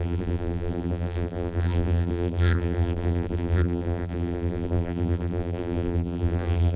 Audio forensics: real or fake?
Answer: fake